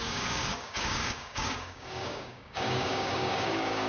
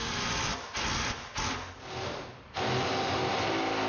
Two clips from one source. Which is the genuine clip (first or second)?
second